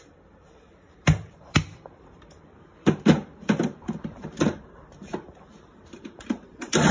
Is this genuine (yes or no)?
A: no